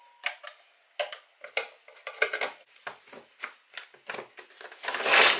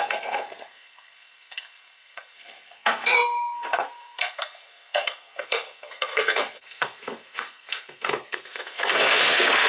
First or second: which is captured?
first